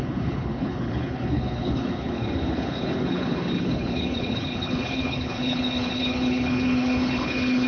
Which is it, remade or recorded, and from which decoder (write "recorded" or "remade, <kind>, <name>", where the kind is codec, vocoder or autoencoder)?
remade, codec, HILCodec